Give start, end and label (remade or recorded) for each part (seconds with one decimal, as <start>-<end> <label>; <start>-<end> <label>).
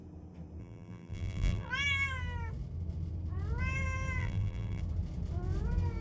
0.0-0.6 recorded; 0.6-1.7 remade; 1.7-4.2 recorded; 4.2-4.8 remade; 4.8-6.0 recorded